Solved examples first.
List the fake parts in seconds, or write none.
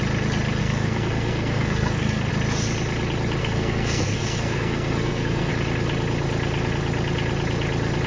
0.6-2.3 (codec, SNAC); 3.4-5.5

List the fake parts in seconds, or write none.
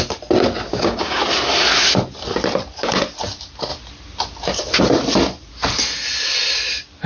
0.7-1.2 (codec, DAC)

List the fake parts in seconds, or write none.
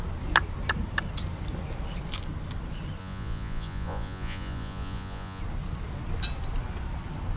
3.0-5.4 (vocoder, Vocos)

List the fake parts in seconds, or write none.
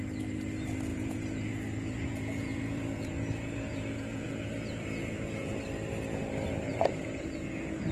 0.9-5.6 (vocoder, Vocos); 6.7-7.9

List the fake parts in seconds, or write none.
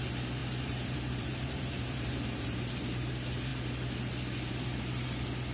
0.4-3.1 (vocoder, BigVGAN v2)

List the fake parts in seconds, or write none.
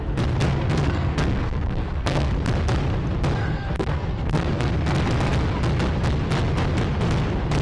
0.4-2.3 (codec, SNAC); 3.4-4.7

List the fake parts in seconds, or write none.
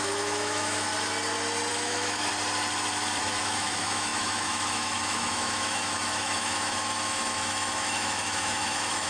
0.0-0.9 (autoencoder, DAC-VAE); 1.7-2.3; 3.2-9.1